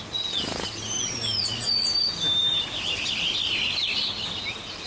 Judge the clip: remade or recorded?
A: recorded